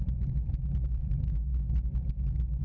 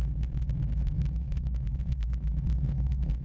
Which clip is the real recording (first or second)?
first